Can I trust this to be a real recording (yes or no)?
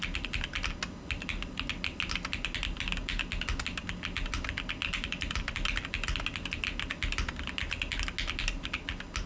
yes